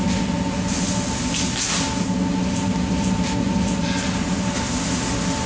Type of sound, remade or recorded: recorded